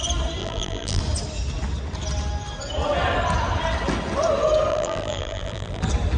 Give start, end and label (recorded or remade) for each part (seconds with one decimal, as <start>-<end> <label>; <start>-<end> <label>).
0.0-0.4 recorded; 0.4-1.0 remade; 1.0-4.7 recorded; 4.7-5.8 remade; 5.8-6.2 recorded